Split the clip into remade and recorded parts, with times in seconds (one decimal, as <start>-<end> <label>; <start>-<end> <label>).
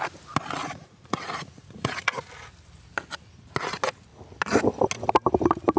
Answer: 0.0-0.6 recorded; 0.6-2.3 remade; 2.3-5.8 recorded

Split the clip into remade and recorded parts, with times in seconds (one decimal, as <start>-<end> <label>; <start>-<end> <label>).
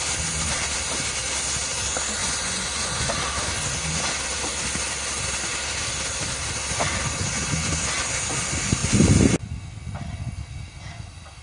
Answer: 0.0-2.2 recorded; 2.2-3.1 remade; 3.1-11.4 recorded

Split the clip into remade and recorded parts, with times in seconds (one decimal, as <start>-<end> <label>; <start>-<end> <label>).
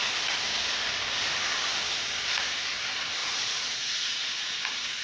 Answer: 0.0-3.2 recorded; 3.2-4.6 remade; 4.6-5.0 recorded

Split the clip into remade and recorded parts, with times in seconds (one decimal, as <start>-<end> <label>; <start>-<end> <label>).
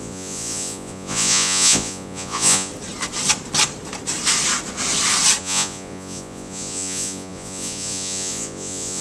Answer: 0.0-2.7 remade; 2.7-5.4 recorded; 5.4-9.0 remade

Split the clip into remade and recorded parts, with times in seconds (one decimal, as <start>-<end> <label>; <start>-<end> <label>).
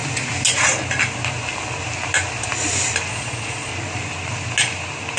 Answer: 0.0-3.1 recorded; 3.1-3.7 remade; 3.7-5.2 recorded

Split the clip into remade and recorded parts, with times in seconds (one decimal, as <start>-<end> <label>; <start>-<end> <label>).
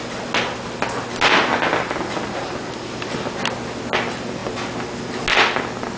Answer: 0.0-6.0 recorded